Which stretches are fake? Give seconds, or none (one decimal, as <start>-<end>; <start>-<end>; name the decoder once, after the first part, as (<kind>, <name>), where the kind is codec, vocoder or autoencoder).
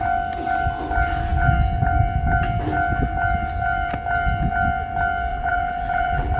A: 5.3-6.4 (vocoder, BigVGAN v2)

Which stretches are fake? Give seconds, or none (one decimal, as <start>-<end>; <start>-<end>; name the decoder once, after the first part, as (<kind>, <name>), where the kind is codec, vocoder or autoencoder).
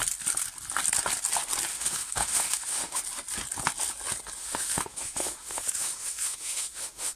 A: 1.7-3.0 (autoencoder, DAC-VAE); 4.4-7.2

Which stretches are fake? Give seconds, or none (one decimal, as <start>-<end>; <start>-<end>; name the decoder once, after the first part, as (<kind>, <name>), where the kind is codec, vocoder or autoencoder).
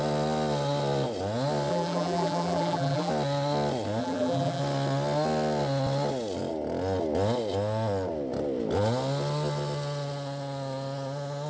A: 1.7-3.1 (vocoder, BigVGAN v2); 4.0-4.6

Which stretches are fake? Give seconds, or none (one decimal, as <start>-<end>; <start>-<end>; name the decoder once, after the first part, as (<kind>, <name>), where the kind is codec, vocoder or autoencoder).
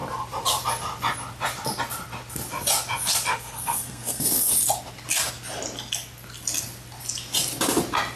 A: 3.3-4.5 (codec, SNAC)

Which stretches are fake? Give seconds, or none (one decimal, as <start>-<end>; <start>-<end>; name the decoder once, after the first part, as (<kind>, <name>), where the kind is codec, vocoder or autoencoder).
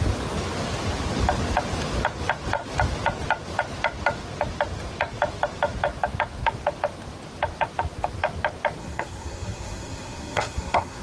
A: 8.8-11.0 (codec, SNAC)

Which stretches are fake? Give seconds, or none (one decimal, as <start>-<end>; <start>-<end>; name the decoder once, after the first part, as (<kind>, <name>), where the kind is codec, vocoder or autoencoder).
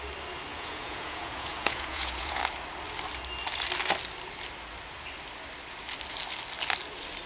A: 0.5-2.4 (vocoder, Vocos)